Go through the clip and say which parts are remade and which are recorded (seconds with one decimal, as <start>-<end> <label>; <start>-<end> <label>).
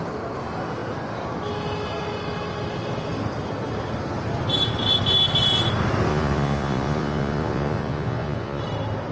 0.0-6.1 recorded; 6.1-8.6 remade; 8.6-9.1 recorded